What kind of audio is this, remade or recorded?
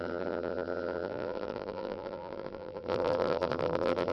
remade